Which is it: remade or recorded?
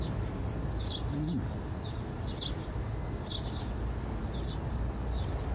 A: recorded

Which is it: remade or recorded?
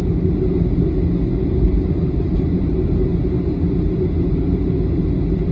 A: recorded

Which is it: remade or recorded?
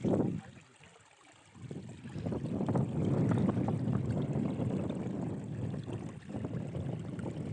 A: recorded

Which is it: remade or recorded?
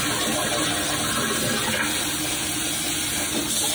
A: recorded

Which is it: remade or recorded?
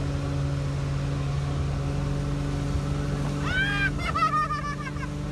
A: recorded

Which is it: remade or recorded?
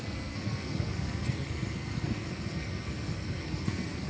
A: remade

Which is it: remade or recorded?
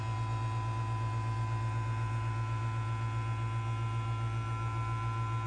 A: recorded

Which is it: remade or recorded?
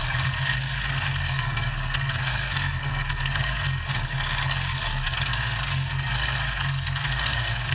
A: remade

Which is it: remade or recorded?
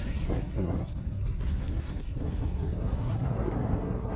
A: remade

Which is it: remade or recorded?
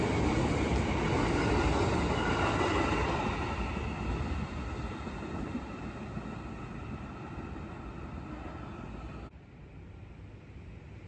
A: recorded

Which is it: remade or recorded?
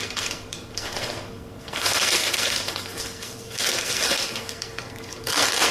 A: remade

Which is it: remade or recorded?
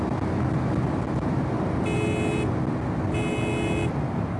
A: recorded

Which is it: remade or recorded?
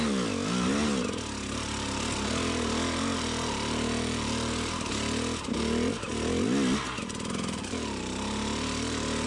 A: recorded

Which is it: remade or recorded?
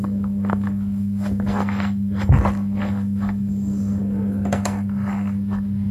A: remade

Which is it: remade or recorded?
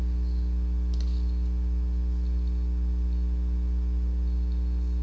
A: recorded